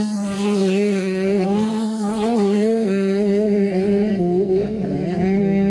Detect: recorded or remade remade